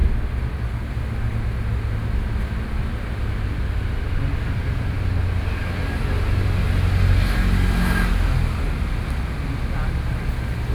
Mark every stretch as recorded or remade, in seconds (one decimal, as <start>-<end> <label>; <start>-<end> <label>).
0.0-10.7 recorded